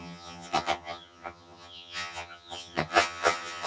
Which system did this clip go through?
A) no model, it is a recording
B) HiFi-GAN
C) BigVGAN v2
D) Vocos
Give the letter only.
B